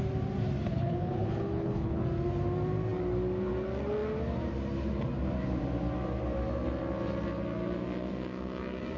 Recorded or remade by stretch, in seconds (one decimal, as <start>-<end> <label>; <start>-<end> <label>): 0.0-0.7 recorded; 0.7-2.0 remade; 2.0-9.0 recorded

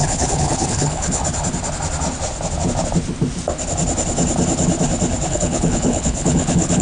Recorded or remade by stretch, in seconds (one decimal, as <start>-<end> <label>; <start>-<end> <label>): 0.0-1.2 remade; 1.2-5.3 recorded; 5.3-6.8 remade

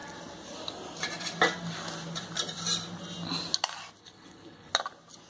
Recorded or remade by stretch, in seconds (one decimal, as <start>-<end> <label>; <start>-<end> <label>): 0.0-4.0 recorded; 4.0-4.7 remade; 4.7-5.3 recorded

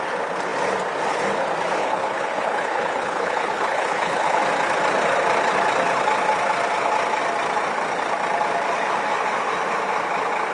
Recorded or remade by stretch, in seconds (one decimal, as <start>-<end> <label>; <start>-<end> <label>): 0.0-1.8 recorded; 1.8-4.4 remade; 4.4-10.5 recorded

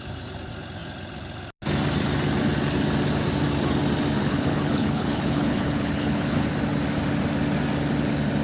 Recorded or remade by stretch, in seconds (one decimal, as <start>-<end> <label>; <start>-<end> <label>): 0.0-4.2 recorded; 4.2-6.5 remade; 6.5-8.4 recorded

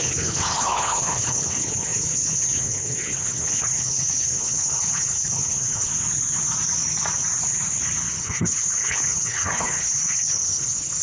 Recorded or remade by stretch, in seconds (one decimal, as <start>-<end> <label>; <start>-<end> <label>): 0.0-5.9 remade; 5.9-8.2 recorded; 8.2-11.0 remade